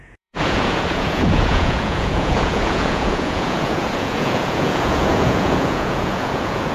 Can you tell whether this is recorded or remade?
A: remade